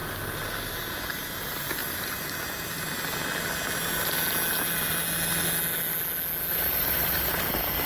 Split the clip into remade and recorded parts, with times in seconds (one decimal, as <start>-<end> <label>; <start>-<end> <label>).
0.0-1.8 recorded; 1.8-2.8 remade; 2.8-6.5 recorded; 6.5-7.3 remade; 7.3-7.9 recorded